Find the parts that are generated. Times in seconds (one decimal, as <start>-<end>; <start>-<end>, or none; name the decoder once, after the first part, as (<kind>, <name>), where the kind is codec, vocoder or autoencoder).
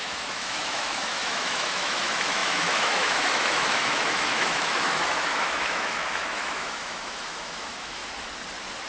0.0-8.0 (autoencoder, DAC-VAE)